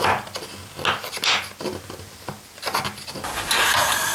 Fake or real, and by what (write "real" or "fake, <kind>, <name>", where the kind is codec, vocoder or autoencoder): real